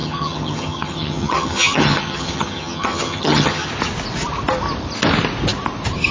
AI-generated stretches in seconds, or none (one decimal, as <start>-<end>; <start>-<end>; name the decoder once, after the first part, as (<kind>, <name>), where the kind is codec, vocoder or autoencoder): 0.0-3.7 (vocoder, HiFi-GAN)